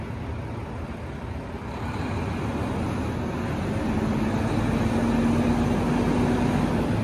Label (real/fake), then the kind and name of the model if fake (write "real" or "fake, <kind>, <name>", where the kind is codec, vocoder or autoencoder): real